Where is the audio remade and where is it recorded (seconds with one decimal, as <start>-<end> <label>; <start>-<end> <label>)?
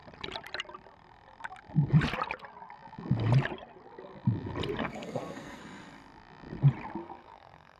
0.0-4.8 recorded; 4.8-5.6 remade; 5.6-7.0 recorded; 7.0-7.8 remade